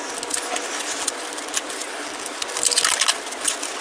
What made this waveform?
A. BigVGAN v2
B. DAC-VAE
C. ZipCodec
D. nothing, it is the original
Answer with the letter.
D